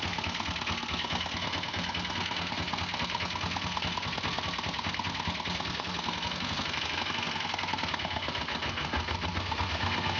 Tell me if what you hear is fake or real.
fake